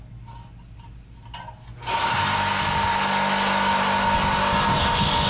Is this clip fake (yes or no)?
no